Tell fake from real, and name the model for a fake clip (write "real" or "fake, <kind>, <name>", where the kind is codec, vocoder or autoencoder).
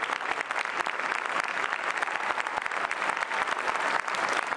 real